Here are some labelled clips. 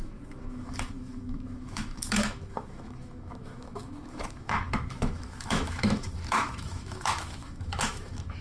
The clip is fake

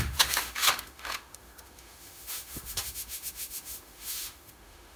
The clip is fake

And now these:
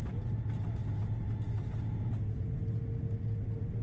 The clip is real